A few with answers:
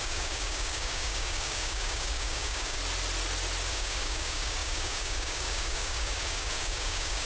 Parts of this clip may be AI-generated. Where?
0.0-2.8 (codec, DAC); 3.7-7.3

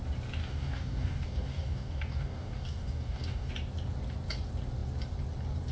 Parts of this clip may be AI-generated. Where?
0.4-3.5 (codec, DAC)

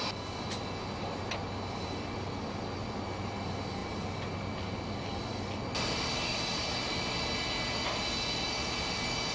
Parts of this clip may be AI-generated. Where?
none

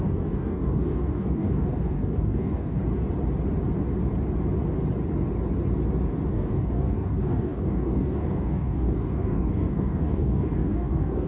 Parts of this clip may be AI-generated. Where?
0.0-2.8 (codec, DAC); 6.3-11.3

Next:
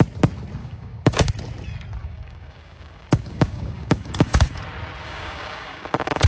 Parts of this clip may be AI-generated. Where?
0.6-1.3 (codec, DAC); 2.0-4.6; 5.0-6.3